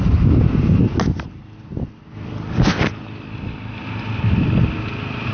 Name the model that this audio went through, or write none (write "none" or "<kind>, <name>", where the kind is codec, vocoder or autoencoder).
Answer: none